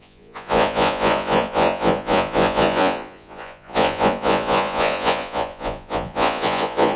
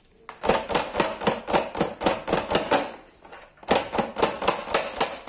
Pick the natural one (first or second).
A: second